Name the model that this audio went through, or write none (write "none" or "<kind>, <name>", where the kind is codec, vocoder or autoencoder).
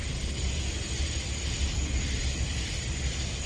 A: none